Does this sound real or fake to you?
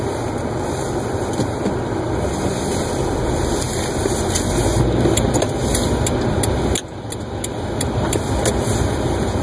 real